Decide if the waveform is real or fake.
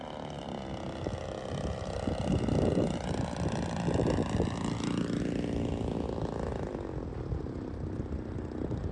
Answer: real